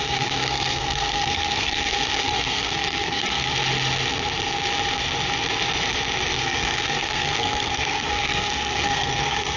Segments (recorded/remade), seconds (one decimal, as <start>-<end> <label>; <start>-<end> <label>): 0.0-3.5 remade; 3.5-6.4 recorded; 6.4-9.6 remade